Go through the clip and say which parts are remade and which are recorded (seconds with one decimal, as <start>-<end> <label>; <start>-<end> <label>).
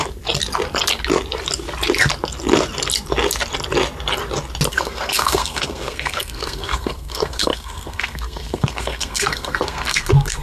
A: 0.0-4.7 recorded; 4.7-10.4 remade